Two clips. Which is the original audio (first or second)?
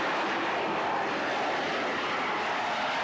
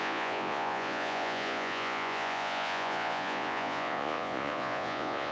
first